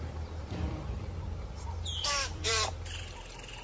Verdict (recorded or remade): remade